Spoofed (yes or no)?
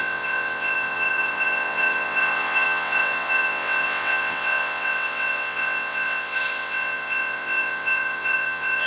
yes